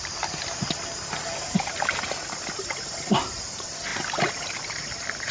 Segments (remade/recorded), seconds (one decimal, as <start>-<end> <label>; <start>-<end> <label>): 0.0-5.3 recorded